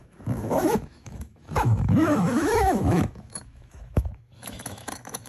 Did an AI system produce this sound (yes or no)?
yes